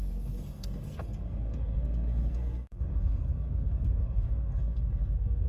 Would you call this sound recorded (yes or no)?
no